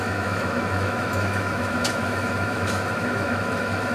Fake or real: fake